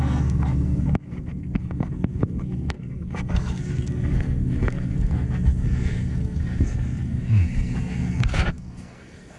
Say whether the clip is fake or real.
fake